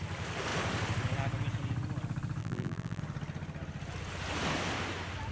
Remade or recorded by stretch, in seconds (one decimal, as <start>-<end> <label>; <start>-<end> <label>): 0.0-2.4 recorded; 2.4-3.0 remade; 3.0-5.3 recorded